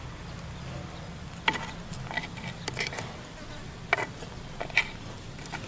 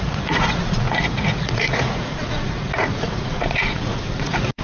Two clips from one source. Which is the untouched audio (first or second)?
first